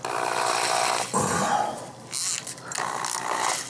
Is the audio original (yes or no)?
yes